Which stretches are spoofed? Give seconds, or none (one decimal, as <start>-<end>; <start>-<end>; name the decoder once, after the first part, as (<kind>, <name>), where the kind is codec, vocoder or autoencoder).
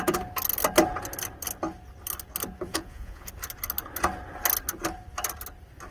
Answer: 2.7-3.3 (vocoder, Vocos)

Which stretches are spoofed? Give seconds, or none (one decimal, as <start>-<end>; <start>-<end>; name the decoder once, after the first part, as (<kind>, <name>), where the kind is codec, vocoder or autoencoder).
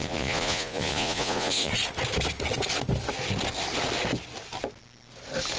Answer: 0.0-1.7 (vocoder, Vocos)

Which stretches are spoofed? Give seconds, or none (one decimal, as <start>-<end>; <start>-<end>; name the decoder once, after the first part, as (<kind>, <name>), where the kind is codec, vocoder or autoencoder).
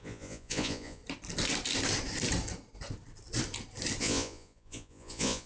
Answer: 0.0-1.0 (vocoder, Vocos); 4.0-5.5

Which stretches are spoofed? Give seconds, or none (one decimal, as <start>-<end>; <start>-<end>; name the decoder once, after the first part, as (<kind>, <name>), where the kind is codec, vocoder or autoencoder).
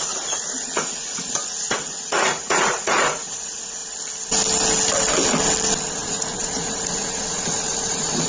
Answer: 0.0-3.8 (vocoder, Vocos); 5.9-8.3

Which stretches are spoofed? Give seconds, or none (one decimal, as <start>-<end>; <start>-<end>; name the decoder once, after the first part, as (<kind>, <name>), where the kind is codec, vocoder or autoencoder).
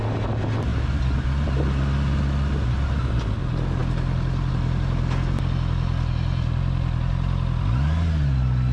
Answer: none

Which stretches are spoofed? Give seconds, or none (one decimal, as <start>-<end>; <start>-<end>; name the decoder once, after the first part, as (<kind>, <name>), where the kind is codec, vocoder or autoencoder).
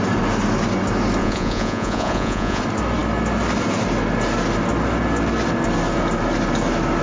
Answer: 1.2-2.6 (vocoder, Vocos)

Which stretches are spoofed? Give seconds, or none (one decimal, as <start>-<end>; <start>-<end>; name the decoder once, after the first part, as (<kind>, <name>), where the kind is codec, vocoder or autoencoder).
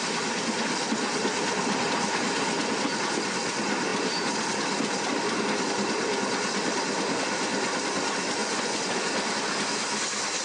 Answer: 8.4-9.1 (vocoder, Vocos)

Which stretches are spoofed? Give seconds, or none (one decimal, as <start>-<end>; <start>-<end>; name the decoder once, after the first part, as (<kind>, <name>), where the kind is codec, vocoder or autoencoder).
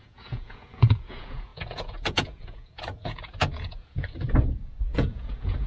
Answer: 0.0-5.7 (vocoder, Vocos)